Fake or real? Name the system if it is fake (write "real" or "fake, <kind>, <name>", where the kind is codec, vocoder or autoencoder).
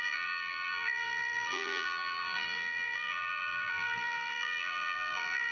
fake, vocoder, BigVGAN v2